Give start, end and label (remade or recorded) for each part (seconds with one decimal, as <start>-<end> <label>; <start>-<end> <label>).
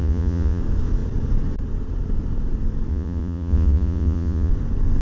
0.0-0.6 remade; 0.6-2.9 recorded; 2.9-4.5 remade; 4.5-5.0 recorded